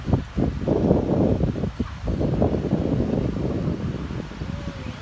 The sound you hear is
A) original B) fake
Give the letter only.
A